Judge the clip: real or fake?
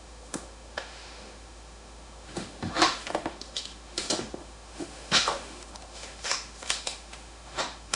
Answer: fake